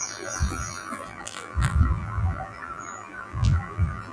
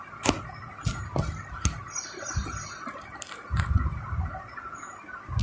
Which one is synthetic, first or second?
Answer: first